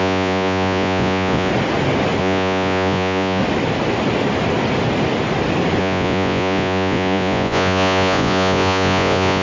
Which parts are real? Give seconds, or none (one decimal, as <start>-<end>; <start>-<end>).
1.5-2.2; 3.4-5.8